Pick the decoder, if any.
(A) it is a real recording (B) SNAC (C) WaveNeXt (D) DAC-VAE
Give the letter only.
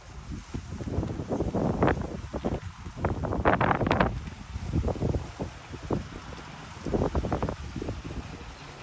A